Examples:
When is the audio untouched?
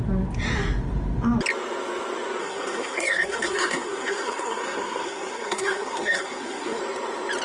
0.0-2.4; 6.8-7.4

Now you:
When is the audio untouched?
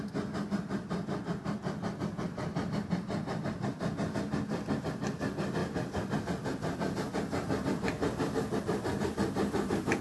0.0-10.0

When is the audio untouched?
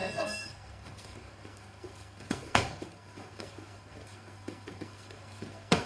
none